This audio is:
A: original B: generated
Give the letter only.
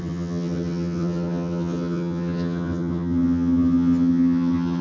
B